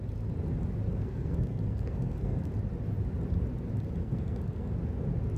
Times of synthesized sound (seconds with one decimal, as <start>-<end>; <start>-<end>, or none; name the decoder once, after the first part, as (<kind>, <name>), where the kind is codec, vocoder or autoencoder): 0.9-2.5 (codec, SNAC); 4.0-4.7